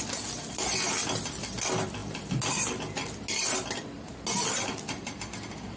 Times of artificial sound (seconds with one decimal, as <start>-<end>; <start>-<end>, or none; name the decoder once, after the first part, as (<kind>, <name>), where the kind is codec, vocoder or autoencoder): none